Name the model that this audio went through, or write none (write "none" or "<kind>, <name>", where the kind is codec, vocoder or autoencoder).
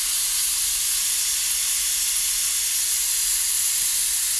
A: none